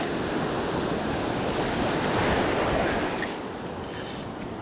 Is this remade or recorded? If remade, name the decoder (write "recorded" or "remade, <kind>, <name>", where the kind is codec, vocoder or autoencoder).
recorded